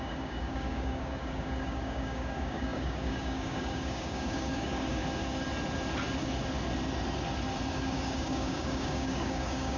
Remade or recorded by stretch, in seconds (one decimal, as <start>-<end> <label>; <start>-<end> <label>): 0.0-5.0 remade; 5.0-7.7 recorded; 7.7-9.8 remade